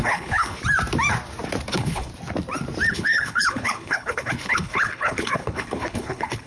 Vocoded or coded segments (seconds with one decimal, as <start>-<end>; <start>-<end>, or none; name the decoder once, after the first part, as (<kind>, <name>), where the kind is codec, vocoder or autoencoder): 0.0-0.6 (codec, HILCodec); 1.7-2.1; 2.9-6.5